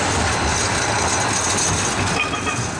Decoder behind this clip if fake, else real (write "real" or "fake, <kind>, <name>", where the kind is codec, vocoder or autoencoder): real